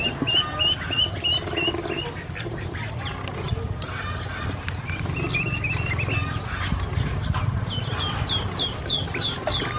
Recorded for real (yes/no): yes